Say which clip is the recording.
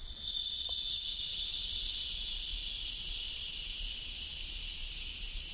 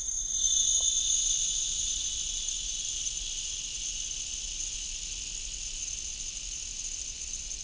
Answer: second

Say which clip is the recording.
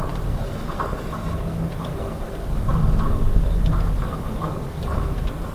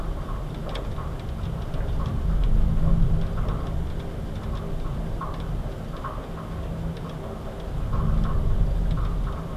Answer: second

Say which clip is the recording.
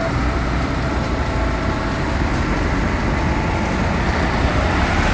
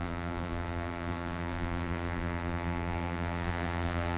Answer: first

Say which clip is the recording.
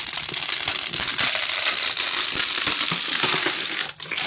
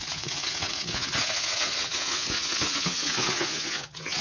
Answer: first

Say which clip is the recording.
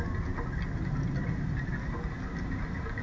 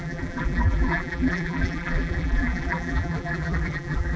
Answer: first